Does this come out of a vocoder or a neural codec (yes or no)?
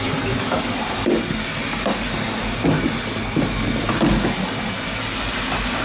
no